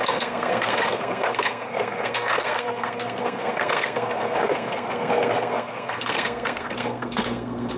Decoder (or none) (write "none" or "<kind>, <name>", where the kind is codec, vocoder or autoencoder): codec, SNAC